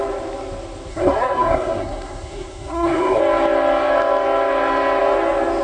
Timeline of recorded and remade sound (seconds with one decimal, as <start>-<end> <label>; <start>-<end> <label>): 0.0-0.9 recorded; 0.9-3.2 remade; 3.2-5.6 recorded

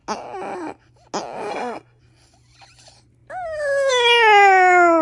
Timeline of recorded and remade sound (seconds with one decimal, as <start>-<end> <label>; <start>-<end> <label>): 0.0-1.5 recorded; 1.5-2.0 remade; 2.0-5.0 recorded

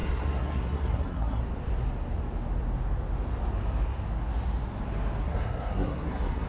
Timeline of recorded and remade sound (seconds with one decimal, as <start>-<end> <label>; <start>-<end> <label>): 0.0-1.4 remade; 1.4-5.2 recorded; 5.2-6.5 remade